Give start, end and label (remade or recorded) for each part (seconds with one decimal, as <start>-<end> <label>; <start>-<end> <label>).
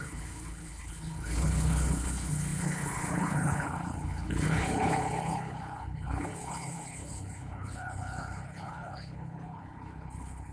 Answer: 0.0-10.5 remade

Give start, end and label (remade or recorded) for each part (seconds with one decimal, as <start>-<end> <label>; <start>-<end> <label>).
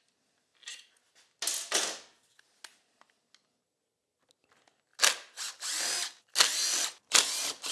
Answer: 0.0-7.7 recorded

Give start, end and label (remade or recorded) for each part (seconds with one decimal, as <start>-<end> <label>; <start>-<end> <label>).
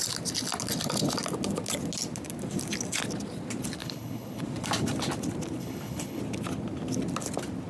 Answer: 0.0-3.8 recorded; 3.8-4.4 remade; 4.4-5.6 recorded; 5.6-6.2 remade; 6.2-7.7 recorded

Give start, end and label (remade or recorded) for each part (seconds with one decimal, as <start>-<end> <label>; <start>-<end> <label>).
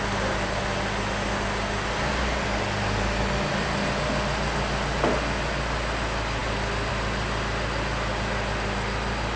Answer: 0.0-9.4 recorded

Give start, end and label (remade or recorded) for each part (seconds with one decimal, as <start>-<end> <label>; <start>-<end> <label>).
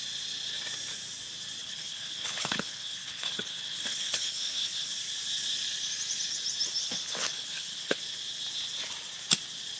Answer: 0.0-1.6 recorded; 1.6-4.9 remade; 4.9-6.8 recorded; 6.8-8.0 remade; 8.0-9.8 recorded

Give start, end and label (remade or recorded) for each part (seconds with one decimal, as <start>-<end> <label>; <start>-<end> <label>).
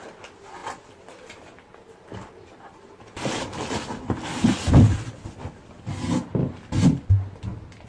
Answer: 0.0-7.9 recorded